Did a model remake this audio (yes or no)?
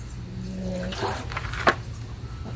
no